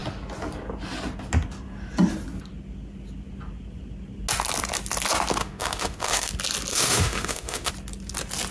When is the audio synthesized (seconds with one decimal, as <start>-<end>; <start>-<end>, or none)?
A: 5.4-6.3; 6.7-7.7

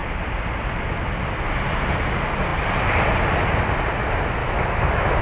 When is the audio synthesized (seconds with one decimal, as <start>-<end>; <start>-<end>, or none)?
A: 4.4-5.2

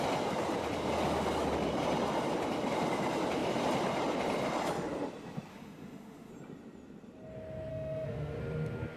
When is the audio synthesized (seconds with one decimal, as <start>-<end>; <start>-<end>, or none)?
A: 5.5-6.3; 7.7-8.4